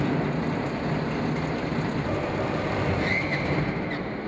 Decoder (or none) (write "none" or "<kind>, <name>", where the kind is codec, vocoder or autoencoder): none